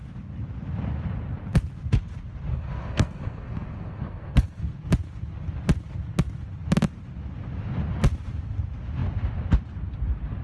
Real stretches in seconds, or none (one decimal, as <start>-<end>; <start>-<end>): 0.0-2.5; 4.6-10.4